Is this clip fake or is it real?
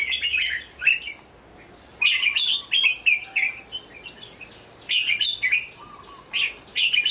real